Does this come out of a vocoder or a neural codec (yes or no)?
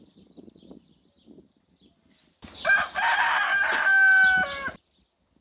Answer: no